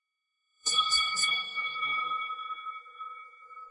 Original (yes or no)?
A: no